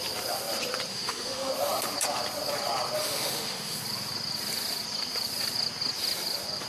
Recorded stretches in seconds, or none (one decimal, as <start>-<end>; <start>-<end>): 0.0-0.9; 1.5-3.0; 3.8-6.7